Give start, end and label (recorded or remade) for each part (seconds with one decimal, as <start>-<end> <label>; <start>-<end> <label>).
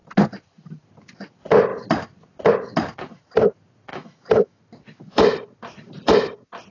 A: 0.0-3.9 recorded; 3.9-4.6 remade; 4.6-6.7 recorded